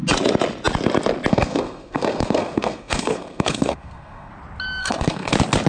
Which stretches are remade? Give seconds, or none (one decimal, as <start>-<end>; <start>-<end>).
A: 1.3-4.3; 4.8-5.3